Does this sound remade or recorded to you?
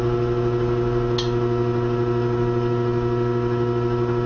recorded